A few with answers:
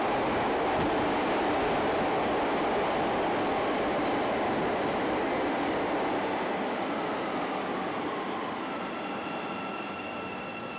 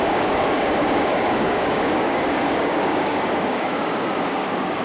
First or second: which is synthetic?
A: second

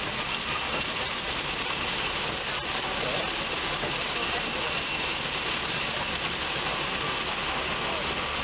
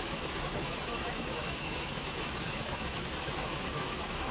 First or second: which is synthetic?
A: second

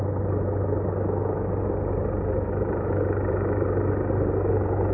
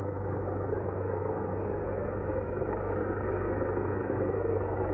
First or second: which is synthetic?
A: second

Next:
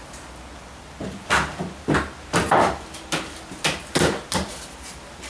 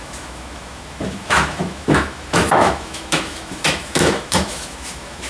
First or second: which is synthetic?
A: second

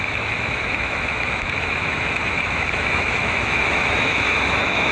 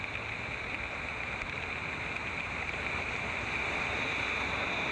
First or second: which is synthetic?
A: first